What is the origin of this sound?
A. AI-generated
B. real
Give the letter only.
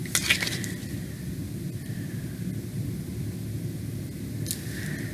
B